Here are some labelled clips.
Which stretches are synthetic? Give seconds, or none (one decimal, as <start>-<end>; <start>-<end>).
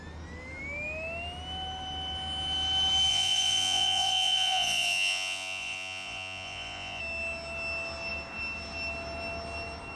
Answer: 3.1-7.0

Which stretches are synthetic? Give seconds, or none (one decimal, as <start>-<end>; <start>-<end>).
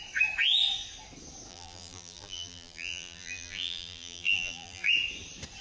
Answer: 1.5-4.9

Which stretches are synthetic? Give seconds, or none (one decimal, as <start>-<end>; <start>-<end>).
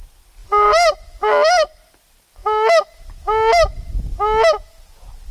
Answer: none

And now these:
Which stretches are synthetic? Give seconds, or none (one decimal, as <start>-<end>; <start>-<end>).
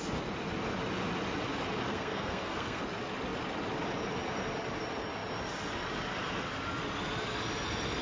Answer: 1.9-2.8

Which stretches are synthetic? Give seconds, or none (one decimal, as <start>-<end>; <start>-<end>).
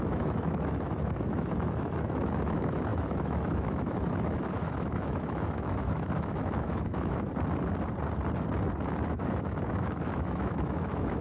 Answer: 0.0-7.3; 9.1-11.2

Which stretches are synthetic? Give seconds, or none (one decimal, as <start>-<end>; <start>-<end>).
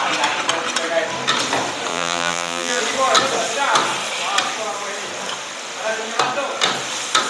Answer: 1.9-2.8